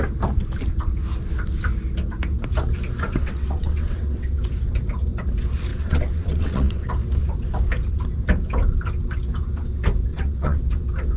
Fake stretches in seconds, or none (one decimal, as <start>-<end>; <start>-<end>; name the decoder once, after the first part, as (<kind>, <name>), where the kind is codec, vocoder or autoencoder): 3.2-4.4 (vocoder, WaveNeXt); 5.7-6.9; 10.1-10.6